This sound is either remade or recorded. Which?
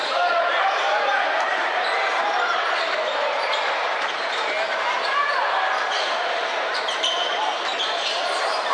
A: remade